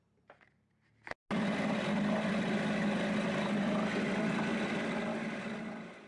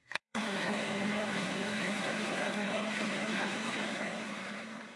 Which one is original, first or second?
first